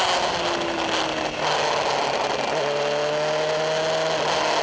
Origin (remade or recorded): recorded